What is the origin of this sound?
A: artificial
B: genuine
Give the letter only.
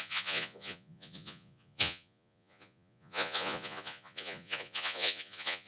A